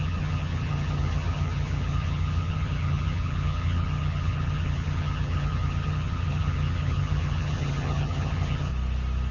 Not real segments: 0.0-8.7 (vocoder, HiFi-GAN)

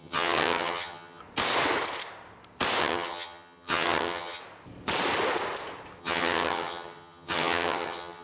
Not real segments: 0.0-1.2 (vocoder, HiFi-GAN); 2.8-4.4; 6.0-8.2

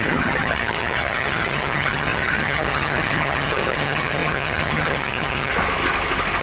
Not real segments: 0.0-5.5 (vocoder, HiFi-GAN)

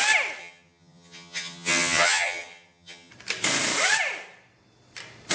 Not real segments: 0.4-3.1 (vocoder, HiFi-GAN)

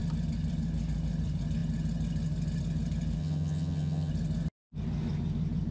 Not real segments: 3.2-4.1 (vocoder, HiFi-GAN)

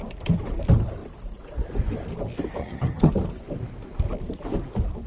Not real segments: 2.6-3.1 (vocoder, HiFi-GAN)